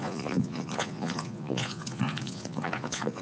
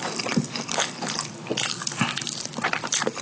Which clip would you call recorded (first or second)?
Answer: second